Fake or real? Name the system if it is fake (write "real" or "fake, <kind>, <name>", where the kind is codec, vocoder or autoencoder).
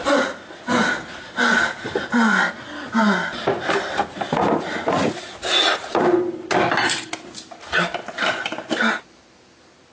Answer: real